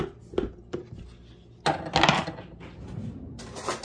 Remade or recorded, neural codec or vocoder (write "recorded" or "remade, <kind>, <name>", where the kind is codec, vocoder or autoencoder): recorded